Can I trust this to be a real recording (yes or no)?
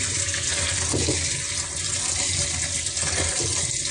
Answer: yes